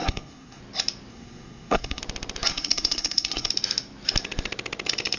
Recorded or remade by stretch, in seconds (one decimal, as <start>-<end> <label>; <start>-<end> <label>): 0.0-0.6 remade; 0.6-1.1 recorded; 1.1-2.0 remade; 2.0-2.5 recorded; 2.5-3.5 remade; 3.5-5.2 recorded